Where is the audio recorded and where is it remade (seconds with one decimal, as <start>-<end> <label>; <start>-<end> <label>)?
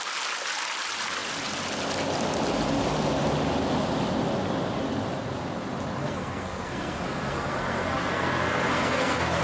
0.0-6.0 recorded; 6.0-9.4 remade